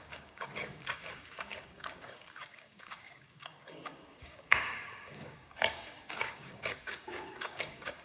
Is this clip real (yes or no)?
no